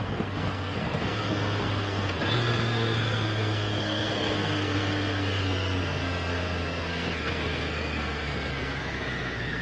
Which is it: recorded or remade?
remade